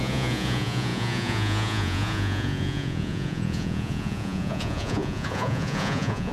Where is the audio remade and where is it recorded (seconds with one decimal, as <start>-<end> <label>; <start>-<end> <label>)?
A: 0.0-6.3 remade